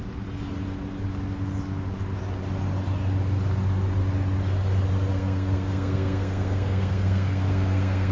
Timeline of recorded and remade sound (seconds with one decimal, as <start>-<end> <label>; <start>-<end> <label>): 0.0-5.1 recorded; 5.1-8.1 remade